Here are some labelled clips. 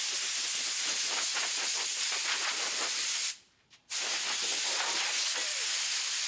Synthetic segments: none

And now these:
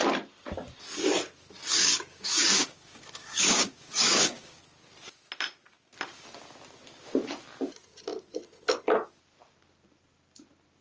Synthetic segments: 1.7-4.6 (codec, DAC)

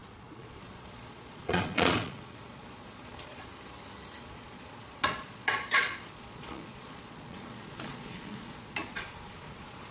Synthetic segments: 0.0-3.5 (vocoder, Vocos); 4.2-9.9